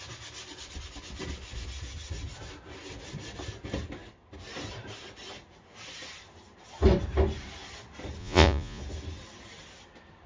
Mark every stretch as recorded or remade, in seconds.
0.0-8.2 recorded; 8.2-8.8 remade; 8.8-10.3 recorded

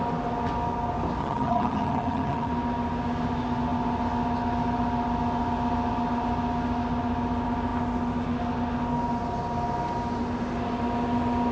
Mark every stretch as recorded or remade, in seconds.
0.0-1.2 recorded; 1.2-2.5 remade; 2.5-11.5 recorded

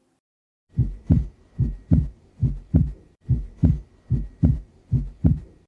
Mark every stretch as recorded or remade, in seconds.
0.0-3.6 remade; 3.6-4.1 recorded; 4.1-5.7 remade